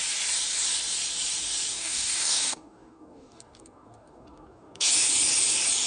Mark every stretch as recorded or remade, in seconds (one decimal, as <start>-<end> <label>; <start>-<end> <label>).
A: 0.0-1.7 recorded; 1.7-4.9 remade; 4.9-5.9 recorded

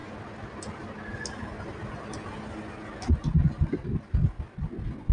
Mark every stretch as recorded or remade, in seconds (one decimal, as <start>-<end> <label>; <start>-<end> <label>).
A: 0.0-5.1 recorded

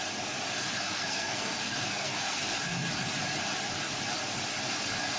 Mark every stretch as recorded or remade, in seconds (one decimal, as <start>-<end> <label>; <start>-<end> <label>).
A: 0.0-0.7 recorded; 0.7-2.4 remade; 2.4-5.2 recorded

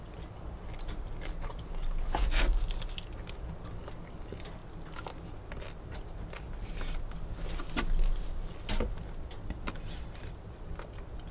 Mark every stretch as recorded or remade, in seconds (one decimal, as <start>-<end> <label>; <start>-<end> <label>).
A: 0.0-11.3 recorded

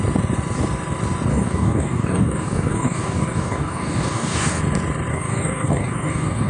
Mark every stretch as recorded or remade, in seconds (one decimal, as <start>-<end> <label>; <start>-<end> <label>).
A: 0.0-1.3 recorded; 1.3-4.6 remade; 4.6-5.1 recorded; 5.1-6.5 remade

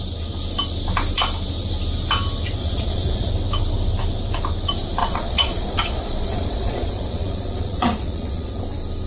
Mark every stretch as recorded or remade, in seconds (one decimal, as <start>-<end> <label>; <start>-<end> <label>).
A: 0.0-2.6 recorded; 2.6-3.3 remade; 3.3-5.0 recorded; 5.0-8.6 remade; 8.6-9.1 recorded